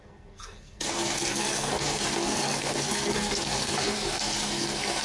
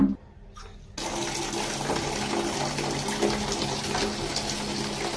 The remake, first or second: first